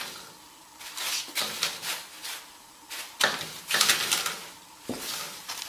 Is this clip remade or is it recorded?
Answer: recorded